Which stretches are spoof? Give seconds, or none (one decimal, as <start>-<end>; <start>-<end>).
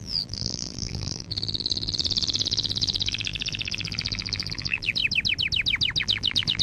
0.0-5.0; 6.0-6.6